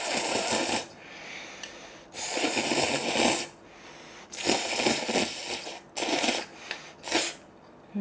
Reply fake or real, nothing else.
real